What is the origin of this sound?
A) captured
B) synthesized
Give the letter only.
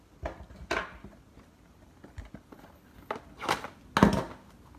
A